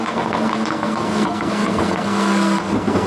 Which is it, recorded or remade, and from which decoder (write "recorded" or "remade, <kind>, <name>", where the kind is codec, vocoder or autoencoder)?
remade, codec, SNAC